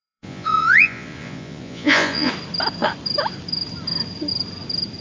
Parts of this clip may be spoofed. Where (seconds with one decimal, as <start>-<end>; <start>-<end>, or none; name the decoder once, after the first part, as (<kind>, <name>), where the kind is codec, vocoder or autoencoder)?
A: 0.0-2.3 (vocoder, Vocos)